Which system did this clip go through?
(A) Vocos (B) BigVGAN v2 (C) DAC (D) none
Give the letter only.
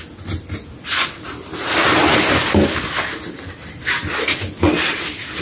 D